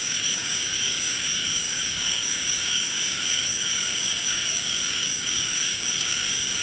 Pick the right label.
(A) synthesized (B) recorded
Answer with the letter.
A